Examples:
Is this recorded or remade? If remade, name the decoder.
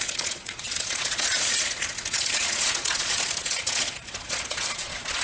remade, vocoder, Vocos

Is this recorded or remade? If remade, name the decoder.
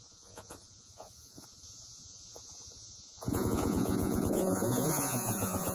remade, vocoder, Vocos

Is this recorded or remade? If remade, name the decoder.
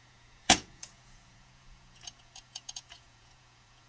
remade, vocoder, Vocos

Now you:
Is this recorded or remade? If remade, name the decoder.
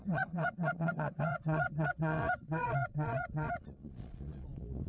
remade, vocoder, Vocos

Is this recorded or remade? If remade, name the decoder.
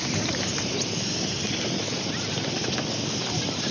recorded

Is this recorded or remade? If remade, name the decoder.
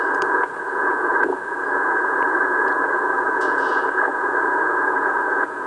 remade, vocoder, Vocos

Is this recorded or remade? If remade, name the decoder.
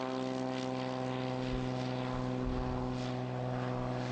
recorded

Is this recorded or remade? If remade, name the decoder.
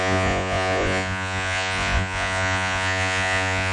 remade, vocoder, Vocos